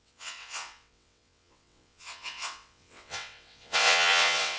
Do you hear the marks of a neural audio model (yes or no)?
yes